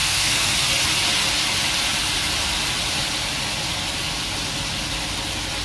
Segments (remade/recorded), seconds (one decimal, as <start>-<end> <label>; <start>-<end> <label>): 0.0-0.5 remade; 0.5-5.6 recorded